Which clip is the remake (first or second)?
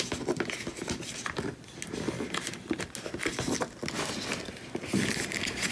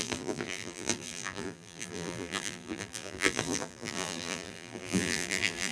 second